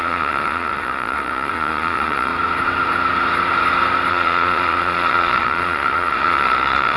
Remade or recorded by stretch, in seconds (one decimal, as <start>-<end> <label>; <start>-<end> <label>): 0.0-2.3 remade; 2.3-4.1 recorded; 4.1-7.0 remade